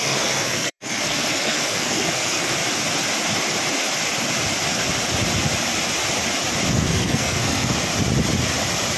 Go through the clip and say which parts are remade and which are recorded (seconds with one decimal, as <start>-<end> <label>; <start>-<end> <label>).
0.0-2.6 remade; 2.6-6.7 recorded; 6.7-7.9 remade; 7.9-9.0 recorded